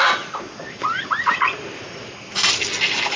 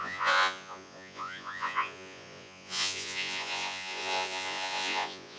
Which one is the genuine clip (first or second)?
first